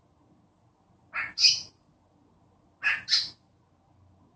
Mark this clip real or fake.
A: real